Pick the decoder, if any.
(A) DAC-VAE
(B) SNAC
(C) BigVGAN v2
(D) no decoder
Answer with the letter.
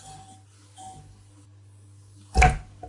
D